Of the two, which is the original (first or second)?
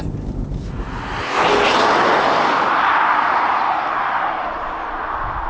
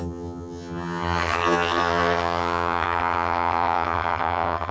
first